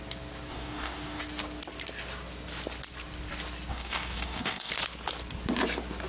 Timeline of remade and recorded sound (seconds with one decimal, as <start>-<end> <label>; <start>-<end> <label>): 0.0-0.5 recorded; 0.5-1.2 remade; 1.2-3.7 recorded; 3.7-4.7 remade; 4.7-6.1 recorded